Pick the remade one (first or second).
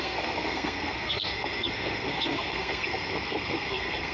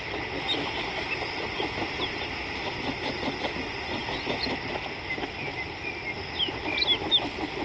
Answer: first